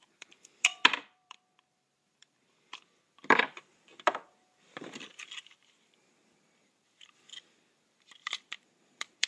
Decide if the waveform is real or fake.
fake